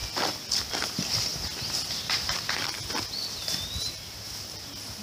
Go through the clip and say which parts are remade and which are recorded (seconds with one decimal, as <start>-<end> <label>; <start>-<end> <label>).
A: 0.0-5.0 recorded